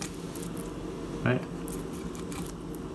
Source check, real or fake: real